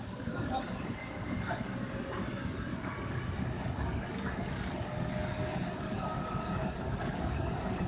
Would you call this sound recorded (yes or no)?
no